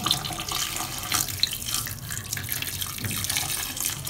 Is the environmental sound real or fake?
real